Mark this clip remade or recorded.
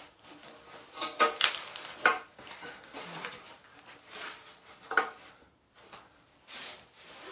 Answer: recorded